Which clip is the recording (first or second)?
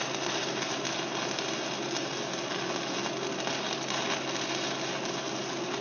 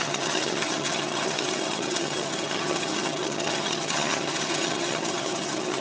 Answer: first